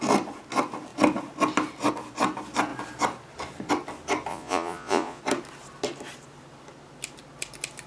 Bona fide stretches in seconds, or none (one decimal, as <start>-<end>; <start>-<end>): 0.0-4.3; 5.2-7.9